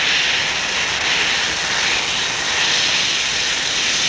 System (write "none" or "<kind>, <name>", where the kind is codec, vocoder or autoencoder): none